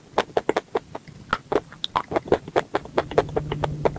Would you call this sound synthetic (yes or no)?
no